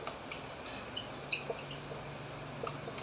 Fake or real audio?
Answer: real